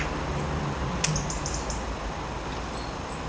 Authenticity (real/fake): real